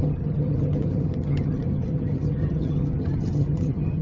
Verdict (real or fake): fake